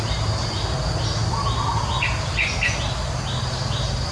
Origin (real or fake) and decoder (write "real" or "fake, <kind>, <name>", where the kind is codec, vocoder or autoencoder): real